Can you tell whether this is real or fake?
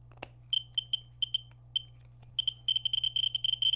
real